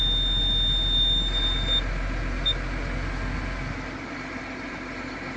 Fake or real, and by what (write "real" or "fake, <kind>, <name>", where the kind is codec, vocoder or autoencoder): real